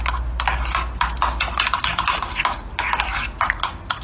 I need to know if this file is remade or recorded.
recorded